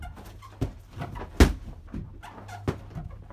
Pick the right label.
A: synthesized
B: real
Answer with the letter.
B